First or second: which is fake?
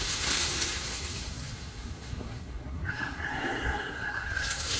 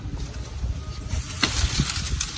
first